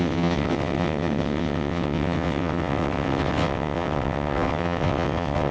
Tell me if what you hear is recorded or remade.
remade